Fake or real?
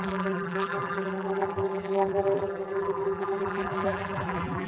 fake